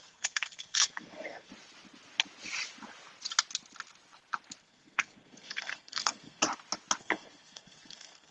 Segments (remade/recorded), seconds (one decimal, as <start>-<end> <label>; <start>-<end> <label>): 0.0-1.5 remade; 1.5-4.6 recorded; 4.6-6.4 remade; 6.4-7.0 recorded; 7.0-8.3 remade